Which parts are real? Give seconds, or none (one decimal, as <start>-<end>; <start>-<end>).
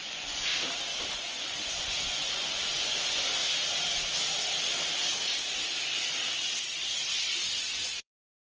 0.5-1.1; 3.4-7.6